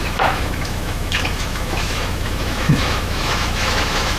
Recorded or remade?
remade